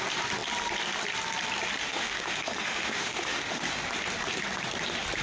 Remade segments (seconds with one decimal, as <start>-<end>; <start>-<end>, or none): 1.8-3.6